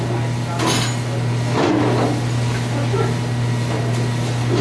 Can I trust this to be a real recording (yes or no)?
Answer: yes